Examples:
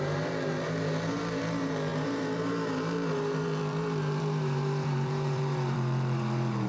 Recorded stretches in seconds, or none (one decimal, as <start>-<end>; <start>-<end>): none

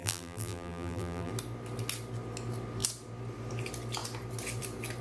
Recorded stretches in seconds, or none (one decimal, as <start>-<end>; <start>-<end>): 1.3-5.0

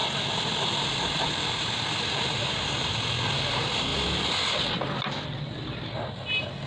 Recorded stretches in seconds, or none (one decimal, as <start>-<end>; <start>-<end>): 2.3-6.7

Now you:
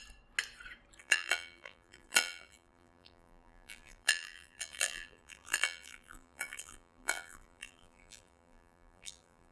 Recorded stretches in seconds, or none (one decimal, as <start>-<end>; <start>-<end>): 0.0-1.0